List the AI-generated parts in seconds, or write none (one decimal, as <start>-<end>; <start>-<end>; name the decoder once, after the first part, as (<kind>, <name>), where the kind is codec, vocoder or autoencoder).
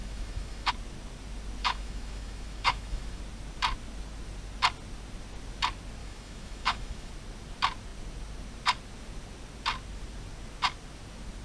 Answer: 0.0-0.7 (autoencoder, DAC-VAE); 1.6-3.2; 6.0-7.1